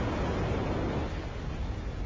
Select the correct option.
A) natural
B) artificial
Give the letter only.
A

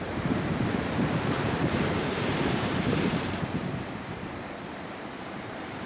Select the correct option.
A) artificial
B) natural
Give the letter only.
A